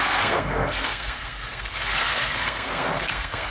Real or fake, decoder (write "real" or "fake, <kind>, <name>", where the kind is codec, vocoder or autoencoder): fake, codec, SNAC